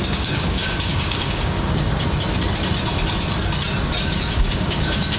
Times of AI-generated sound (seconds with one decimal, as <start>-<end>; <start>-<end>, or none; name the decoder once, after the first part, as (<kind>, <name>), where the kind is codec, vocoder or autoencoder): 0.0-1.9 (codec, DAC); 4.0-5.2